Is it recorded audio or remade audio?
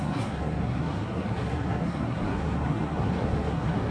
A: remade